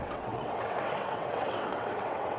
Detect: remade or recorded remade